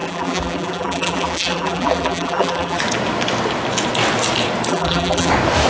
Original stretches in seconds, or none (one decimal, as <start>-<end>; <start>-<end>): 2.8-4.7; 5.3-5.7